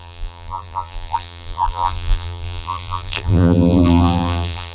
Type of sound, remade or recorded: remade